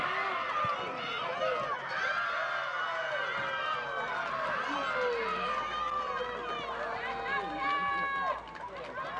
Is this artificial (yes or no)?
no